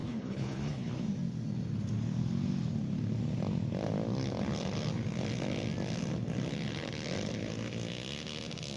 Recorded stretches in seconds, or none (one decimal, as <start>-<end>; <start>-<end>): 0.9-8.8